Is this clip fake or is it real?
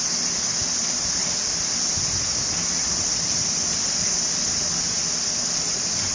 real